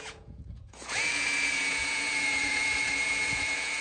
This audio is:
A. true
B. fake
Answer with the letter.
B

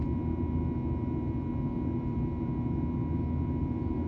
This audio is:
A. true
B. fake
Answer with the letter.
A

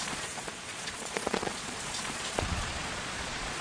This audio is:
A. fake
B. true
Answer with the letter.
A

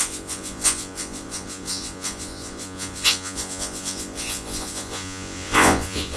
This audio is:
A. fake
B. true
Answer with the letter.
A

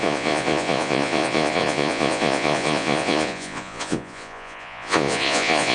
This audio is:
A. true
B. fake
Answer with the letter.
B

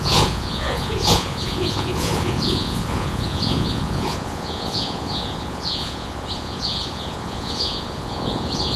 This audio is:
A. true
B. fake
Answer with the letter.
B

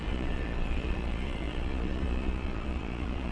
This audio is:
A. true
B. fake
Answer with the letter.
B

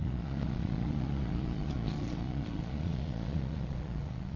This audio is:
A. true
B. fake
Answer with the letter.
B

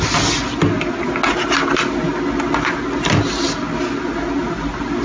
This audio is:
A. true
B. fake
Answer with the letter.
A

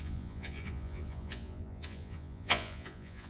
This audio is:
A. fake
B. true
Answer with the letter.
A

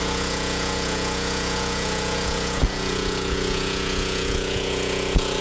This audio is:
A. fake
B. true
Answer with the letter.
A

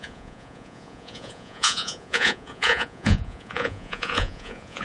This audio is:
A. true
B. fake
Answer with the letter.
B